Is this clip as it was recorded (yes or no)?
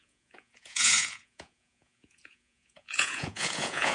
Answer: no